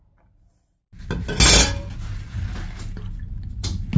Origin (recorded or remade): recorded